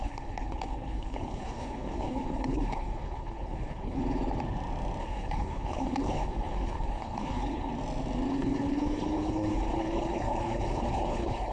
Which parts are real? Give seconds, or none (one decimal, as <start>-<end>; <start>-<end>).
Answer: 4.0-5.0; 7.7-8.3